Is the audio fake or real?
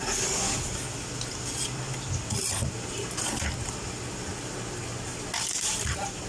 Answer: real